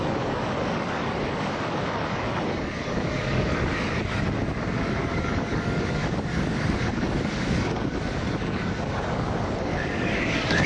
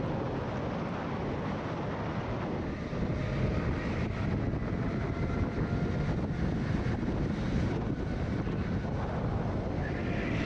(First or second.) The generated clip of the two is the first